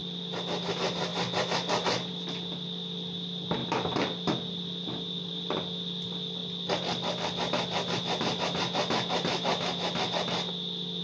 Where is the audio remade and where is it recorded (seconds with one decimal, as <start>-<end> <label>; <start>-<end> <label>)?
0.0-11.0 recorded